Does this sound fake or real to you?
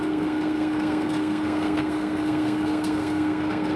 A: fake